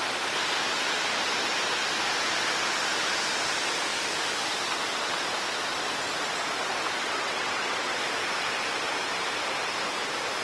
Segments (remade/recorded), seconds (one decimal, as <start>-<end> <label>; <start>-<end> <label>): 0.0-7.0 recorded; 7.0-8.0 remade; 8.0-10.4 recorded